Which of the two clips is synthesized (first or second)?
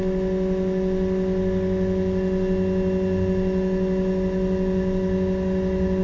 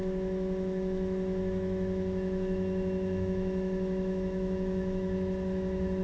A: second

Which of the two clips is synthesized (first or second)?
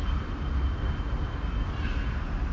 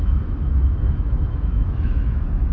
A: second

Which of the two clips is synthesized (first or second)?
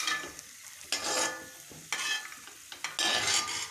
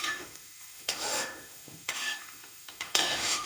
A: second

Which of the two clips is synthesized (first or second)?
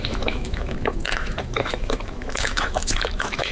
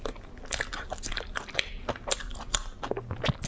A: first